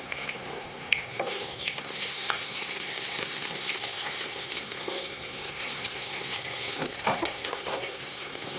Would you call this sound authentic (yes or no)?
no